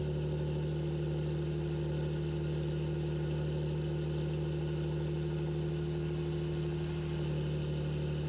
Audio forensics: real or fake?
real